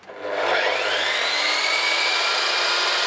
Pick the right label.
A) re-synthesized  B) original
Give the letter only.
B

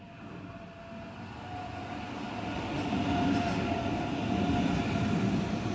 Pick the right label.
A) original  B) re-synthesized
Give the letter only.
A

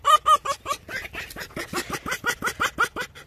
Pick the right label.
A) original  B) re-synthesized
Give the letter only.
A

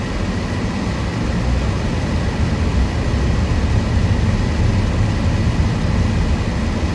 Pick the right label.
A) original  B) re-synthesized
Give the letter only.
A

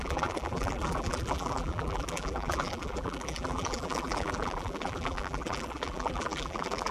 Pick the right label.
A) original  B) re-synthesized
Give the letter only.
B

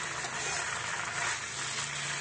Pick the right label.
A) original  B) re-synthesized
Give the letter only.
A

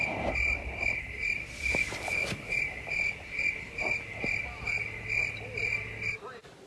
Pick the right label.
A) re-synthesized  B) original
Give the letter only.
B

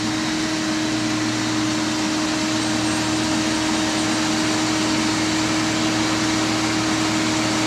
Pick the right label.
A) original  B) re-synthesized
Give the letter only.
A